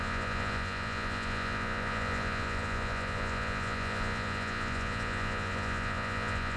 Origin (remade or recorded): remade